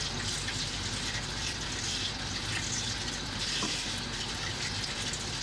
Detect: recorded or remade recorded